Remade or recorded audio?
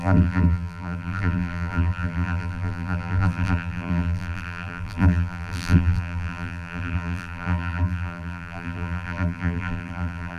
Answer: remade